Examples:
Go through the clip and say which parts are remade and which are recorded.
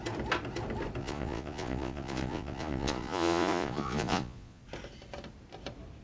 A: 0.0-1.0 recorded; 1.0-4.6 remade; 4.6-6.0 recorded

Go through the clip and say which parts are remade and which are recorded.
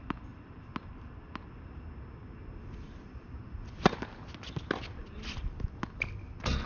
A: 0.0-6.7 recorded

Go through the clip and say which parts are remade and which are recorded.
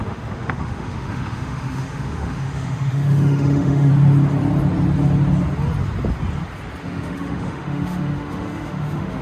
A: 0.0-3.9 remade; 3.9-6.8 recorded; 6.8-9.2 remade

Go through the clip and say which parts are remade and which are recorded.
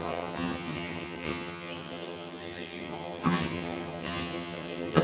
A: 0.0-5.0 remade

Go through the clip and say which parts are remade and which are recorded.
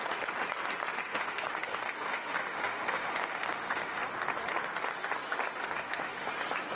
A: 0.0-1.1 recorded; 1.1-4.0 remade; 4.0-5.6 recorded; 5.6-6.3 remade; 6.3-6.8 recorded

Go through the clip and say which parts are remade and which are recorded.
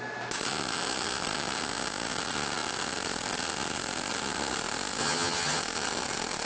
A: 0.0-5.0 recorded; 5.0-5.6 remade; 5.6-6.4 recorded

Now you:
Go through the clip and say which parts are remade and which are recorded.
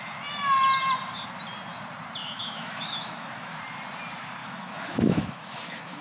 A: 0.0-2.2 recorded; 2.2-3.6 remade; 3.6-4.4 recorded; 4.4-6.0 remade